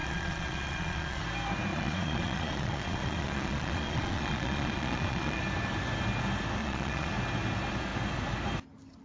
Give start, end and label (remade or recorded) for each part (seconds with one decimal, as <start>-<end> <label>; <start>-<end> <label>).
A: 0.0-1.2 remade; 1.2-1.7 recorded; 1.7-5.4 remade; 5.4-6.6 recorded; 6.6-7.1 remade; 7.1-9.0 recorded